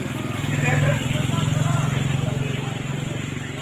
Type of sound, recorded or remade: recorded